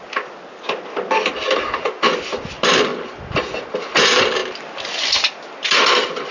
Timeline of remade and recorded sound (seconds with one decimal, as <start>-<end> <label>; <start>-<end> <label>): 0.0-6.3 recorded